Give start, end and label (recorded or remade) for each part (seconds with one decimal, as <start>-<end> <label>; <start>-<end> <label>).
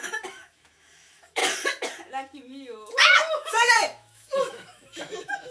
0.0-1.4 remade; 1.4-2.0 recorded; 2.0-5.5 remade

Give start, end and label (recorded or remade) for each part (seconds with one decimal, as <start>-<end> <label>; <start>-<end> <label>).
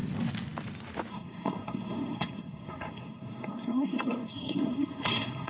0.0-1.1 recorded; 1.1-5.5 remade